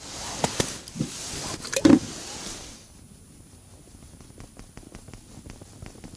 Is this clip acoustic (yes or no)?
yes